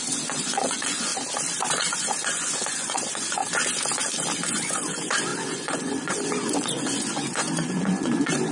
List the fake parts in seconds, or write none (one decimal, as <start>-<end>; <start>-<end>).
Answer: 0.0-1.1; 1.7-3.4; 4.5-8.5